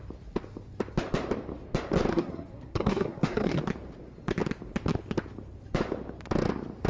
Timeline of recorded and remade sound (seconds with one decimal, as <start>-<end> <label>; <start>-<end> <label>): 0.0-2.1 recorded; 2.1-3.6 remade; 3.6-6.9 recorded